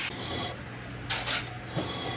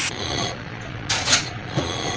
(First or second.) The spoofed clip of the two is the second